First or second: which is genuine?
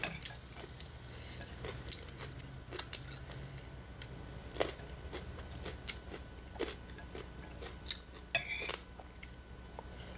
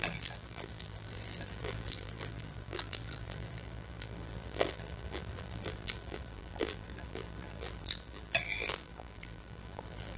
first